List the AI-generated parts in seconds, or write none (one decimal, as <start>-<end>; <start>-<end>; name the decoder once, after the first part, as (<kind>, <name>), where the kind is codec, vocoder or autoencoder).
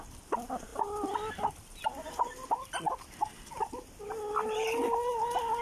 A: none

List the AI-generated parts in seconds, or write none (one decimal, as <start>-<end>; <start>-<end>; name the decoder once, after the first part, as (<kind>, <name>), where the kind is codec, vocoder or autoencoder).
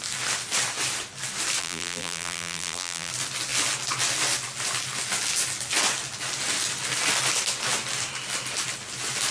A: 1.6-3.1 (vocoder, BigVGAN v2)